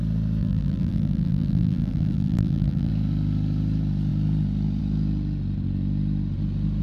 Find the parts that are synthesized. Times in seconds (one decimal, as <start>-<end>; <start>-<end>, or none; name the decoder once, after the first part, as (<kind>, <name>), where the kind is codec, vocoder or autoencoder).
0.4-2.9 (vocoder, BigVGAN v2)